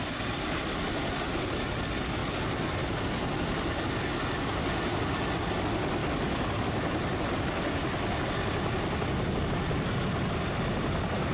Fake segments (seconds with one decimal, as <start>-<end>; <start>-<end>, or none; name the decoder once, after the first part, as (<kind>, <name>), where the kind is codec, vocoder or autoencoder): none